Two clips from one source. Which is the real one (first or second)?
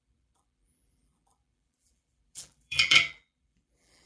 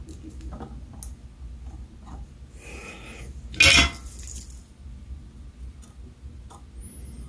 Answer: second